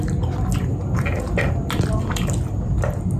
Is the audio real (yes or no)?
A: yes